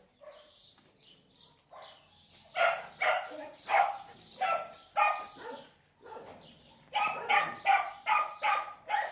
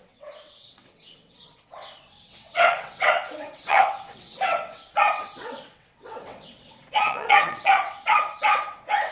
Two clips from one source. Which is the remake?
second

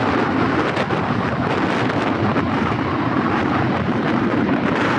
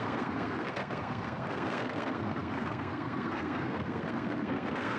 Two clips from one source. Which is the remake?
second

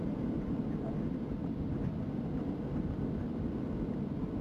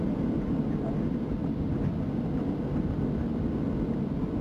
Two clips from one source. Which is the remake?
first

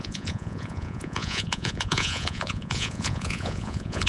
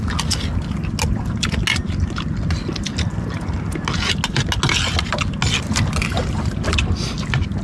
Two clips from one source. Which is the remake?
first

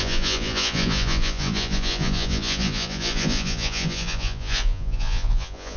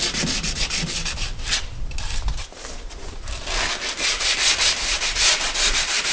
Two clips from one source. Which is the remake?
first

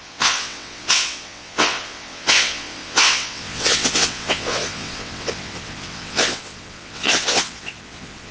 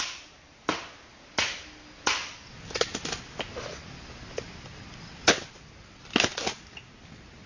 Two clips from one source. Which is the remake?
first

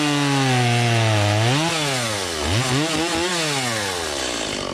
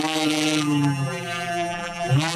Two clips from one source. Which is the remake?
second